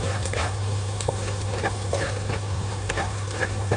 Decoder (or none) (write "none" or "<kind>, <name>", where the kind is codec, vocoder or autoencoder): codec, SNAC